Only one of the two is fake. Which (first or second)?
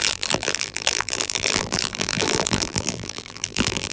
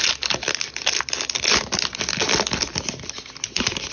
first